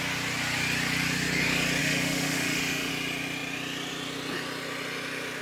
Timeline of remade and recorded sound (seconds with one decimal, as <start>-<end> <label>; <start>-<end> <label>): 0.0-1.8 recorded; 1.8-2.9 remade; 2.9-5.4 recorded